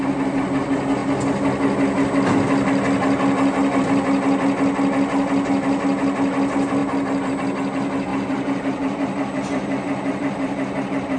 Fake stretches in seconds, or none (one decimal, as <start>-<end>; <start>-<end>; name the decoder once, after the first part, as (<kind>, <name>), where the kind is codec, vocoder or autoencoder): 8.1-11.2 (vocoder, BigVGAN v2)

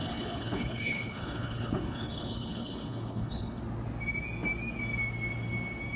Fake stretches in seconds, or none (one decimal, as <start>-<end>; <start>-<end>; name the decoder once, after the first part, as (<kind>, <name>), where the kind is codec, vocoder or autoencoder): 0.0-3.6 (codec, HILCodec)